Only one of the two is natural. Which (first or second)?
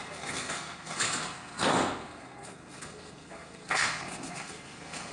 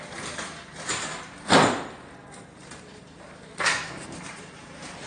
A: second